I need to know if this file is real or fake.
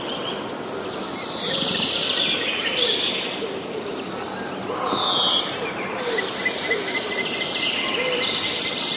real